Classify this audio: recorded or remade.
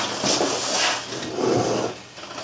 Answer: recorded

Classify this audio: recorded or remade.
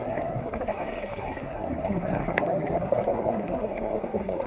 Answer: remade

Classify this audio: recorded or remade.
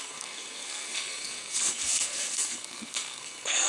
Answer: remade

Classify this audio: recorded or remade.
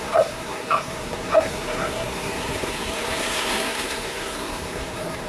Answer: remade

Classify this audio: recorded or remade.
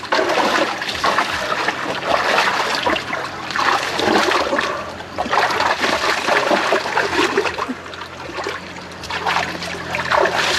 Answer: recorded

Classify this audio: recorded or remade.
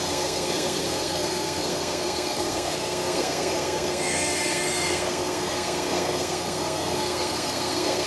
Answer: remade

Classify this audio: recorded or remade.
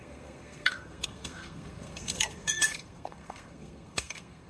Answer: remade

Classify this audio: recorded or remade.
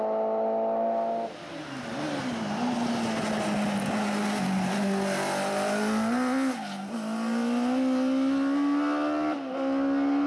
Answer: recorded